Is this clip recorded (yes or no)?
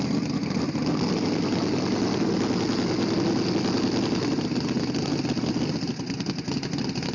yes